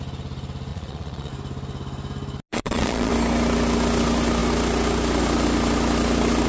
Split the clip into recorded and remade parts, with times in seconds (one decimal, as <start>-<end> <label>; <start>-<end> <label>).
0.0-0.7 recorded; 0.7-1.3 remade; 1.3-2.5 recorded; 2.5-3.1 remade; 3.1-6.5 recorded

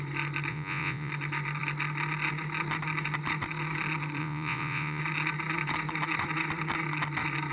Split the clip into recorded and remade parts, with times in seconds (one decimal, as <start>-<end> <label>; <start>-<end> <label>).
0.0-0.5 recorded; 0.5-1.1 remade; 1.1-4.2 recorded; 4.2-5.0 remade; 5.0-7.5 recorded

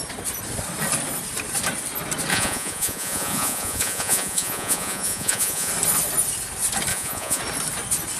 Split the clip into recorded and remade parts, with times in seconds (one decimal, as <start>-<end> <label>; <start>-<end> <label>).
0.0-2.3 recorded; 2.3-5.7 remade; 5.7-6.9 recorded; 6.9-7.4 remade; 7.4-8.2 recorded

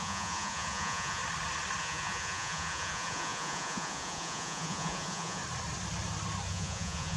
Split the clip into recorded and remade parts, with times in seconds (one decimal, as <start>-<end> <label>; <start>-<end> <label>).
0.0-1.2 remade; 1.2-1.8 recorded; 1.8-5.4 remade; 5.4-6.5 recorded; 6.5-7.2 remade